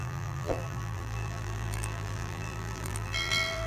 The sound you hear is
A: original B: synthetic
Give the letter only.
B